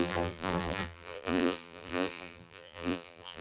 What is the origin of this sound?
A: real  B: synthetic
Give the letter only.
B